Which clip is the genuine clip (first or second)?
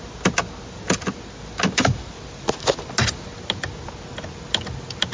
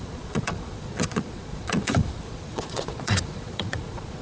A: first